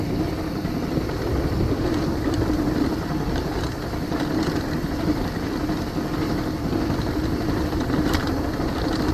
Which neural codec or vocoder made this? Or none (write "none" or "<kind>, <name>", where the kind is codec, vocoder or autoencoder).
none